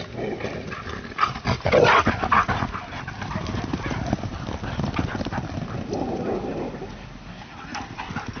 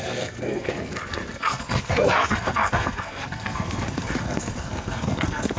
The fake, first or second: second